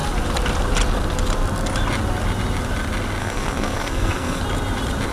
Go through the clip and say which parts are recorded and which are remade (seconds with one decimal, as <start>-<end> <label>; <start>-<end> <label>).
0.0-3.2 recorded; 3.2-4.4 remade; 4.4-5.1 recorded